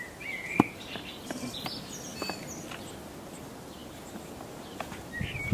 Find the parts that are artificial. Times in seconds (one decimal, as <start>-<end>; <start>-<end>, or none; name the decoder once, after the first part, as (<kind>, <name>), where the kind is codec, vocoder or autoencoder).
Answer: none